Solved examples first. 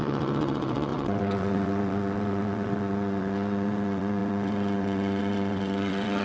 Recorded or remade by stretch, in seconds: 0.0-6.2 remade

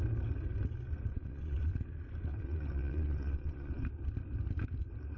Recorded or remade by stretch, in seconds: 0.0-1.1 recorded; 1.1-1.7 remade; 1.7-2.3 recorded; 2.3-3.9 remade; 3.9-5.2 recorded

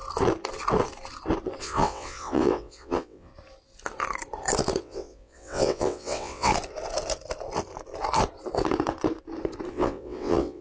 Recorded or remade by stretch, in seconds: 0.0-1.6 recorded; 1.6-3.3 remade; 3.3-4.8 recorded; 4.8-6.5 remade; 6.5-9.7 recorded; 9.7-10.6 remade